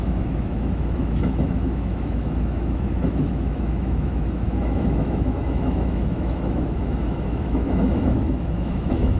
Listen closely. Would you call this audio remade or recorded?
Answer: remade